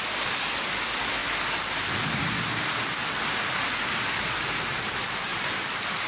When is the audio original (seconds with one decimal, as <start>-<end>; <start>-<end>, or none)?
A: 0.0-6.1